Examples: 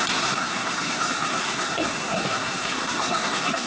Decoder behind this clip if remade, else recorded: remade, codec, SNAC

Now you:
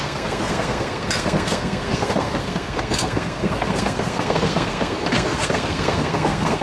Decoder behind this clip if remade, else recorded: remade, codec, SNAC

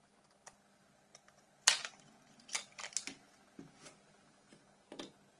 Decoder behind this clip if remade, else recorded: recorded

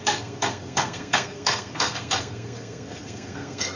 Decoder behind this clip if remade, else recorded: remade, codec, SNAC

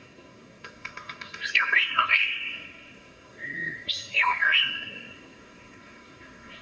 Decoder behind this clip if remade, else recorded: remade, codec, SNAC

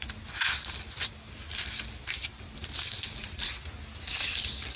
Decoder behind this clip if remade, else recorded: recorded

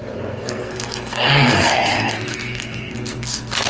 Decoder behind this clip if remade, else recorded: remade, codec, SNAC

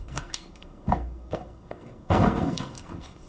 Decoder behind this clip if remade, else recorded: remade, codec, SNAC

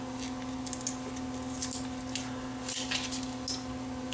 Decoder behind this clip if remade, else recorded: recorded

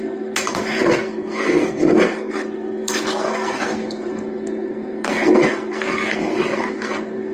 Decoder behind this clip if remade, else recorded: remade, codec, SNAC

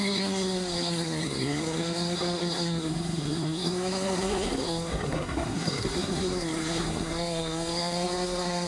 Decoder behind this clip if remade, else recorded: remade, codec, SNAC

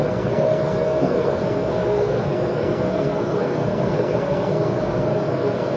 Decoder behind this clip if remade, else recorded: remade, codec, SNAC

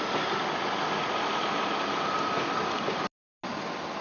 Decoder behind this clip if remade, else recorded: recorded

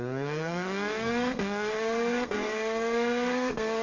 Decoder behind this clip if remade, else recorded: remade, codec, SNAC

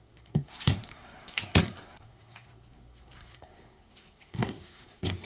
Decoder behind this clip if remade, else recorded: remade, codec, SNAC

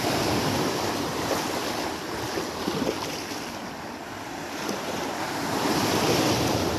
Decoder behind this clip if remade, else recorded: recorded